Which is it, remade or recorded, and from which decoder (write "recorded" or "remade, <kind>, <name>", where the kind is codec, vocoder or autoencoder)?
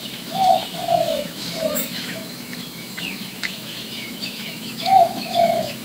remade, autoencoder, DAC-VAE